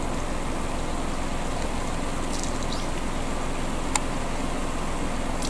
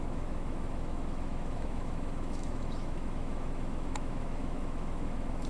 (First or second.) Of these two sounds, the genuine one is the first